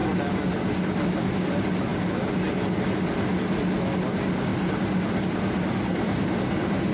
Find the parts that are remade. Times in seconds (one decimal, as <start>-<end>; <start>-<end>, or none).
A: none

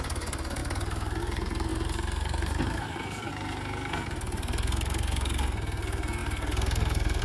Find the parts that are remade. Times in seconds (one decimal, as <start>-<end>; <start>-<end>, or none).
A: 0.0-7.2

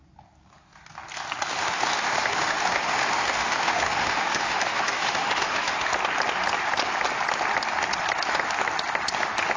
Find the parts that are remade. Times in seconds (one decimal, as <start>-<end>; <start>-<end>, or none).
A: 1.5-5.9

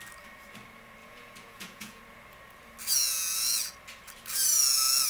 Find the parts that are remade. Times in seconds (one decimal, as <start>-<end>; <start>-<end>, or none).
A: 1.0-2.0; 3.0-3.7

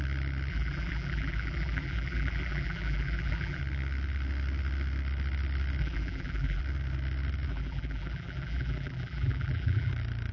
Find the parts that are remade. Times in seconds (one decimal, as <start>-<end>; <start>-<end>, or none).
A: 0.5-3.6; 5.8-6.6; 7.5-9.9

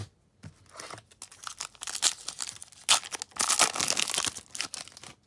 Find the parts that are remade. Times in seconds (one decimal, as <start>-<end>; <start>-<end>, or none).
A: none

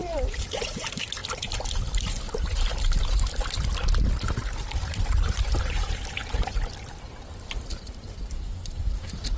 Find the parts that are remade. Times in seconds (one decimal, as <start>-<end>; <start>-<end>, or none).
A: 0.0-1.2; 5.6-6.2; 8.2-9.4

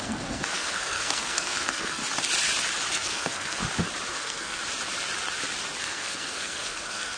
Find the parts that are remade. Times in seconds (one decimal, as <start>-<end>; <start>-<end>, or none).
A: 0.0-2.0; 2.9-3.6; 4.1-4.6; 5.8-7.2